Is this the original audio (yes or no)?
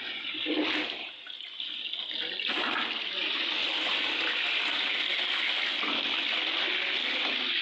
yes